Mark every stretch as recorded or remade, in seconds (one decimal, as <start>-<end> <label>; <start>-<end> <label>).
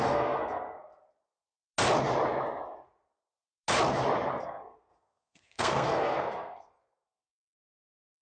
0.0-0.9 remade; 0.9-4.4 recorded; 4.4-8.2 remade